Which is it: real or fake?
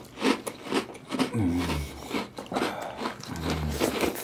real